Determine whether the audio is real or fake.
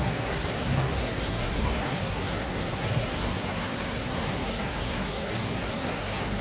fake